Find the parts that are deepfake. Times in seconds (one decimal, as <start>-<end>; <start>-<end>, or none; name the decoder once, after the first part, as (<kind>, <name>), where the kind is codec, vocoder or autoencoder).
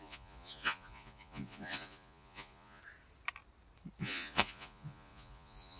0.0-2.8 (vocoder, Vocos); 4.0-5.8